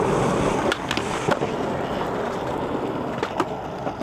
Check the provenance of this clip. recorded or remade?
recorded